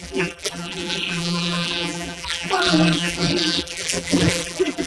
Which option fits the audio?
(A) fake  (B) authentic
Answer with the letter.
A